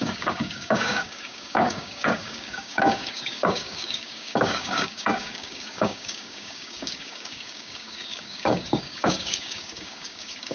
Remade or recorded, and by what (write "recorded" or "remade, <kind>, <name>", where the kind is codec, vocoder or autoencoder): remade, codec, DAC